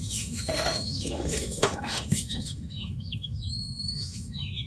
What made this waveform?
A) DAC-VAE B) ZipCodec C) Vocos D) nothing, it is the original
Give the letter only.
A